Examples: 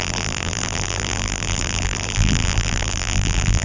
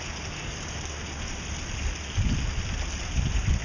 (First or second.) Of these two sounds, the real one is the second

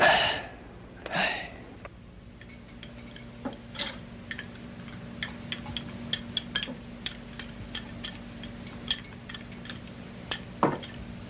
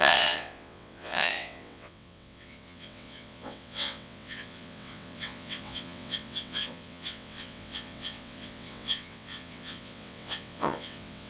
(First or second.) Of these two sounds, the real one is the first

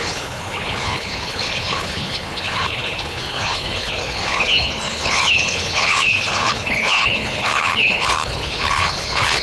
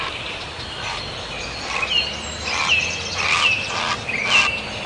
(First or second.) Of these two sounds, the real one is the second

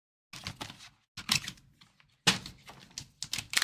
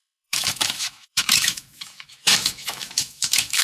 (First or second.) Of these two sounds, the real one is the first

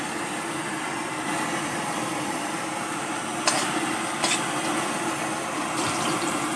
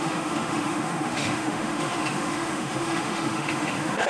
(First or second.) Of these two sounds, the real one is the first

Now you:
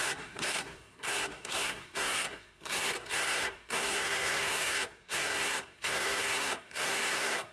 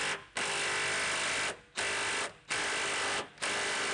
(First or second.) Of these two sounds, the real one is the second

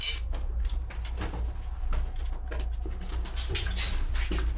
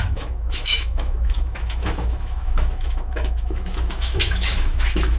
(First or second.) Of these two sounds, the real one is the first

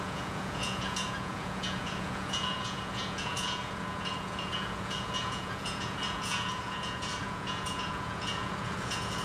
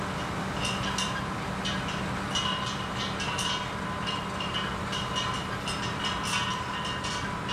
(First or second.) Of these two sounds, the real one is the second